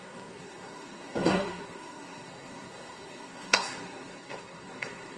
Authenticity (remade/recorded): remade